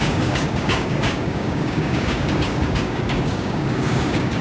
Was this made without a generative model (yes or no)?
no